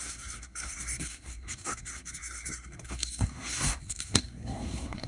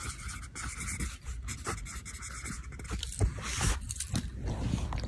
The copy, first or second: first